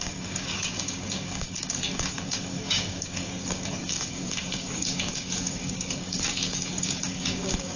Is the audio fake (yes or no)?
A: yes